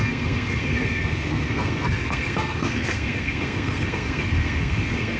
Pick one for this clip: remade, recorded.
remade